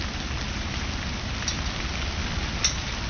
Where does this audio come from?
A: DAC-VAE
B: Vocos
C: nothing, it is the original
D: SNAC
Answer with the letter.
C